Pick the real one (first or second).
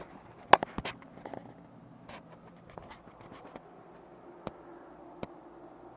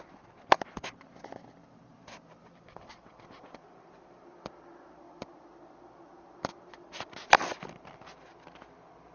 first